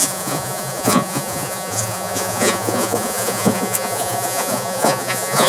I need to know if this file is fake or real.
fake